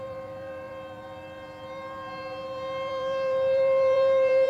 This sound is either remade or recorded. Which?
remade